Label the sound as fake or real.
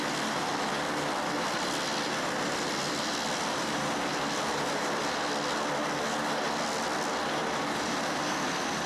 real